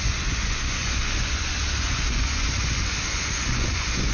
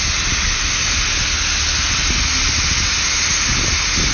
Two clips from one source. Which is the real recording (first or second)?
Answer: second